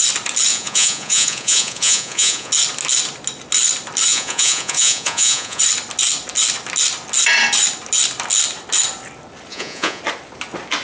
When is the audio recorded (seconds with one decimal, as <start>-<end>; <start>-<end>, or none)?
0.0-0.5; 2.5-4.1; 5.6-9.5; 10.0-10.8